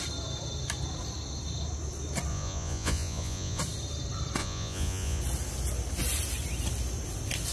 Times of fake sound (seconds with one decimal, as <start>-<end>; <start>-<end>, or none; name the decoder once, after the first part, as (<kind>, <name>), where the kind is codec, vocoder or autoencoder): 2.3-3.6 (vocoder, Vocos); 4.4-5.2